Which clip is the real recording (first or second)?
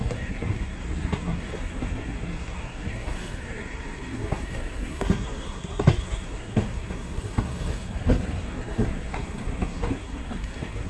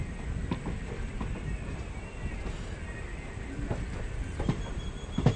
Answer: second